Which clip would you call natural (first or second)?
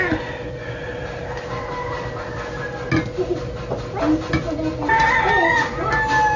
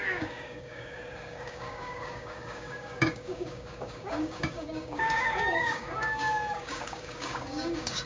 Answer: first